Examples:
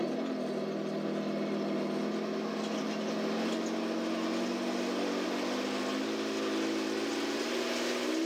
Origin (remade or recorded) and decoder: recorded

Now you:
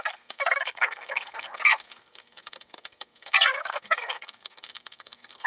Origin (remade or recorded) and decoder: remade, codec, SNAC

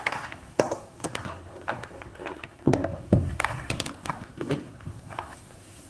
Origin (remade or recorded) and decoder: remade, codec, SNAC